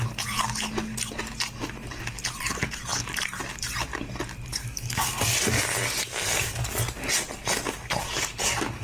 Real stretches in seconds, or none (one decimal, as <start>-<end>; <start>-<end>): 0.0-4.5; 5.1-8.0

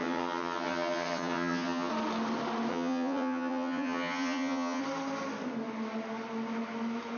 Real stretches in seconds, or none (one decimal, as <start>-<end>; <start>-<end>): 1.9-2.7; 4.8-7.2

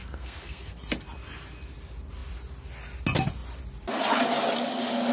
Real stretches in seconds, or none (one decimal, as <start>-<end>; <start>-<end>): 0.7-5.1